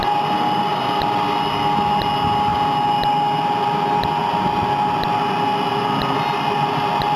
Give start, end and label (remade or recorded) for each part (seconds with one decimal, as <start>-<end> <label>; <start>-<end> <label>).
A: 0.0-7.2 recorded